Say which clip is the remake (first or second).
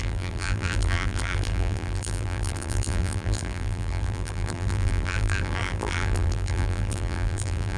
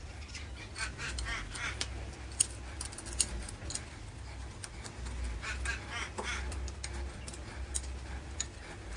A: first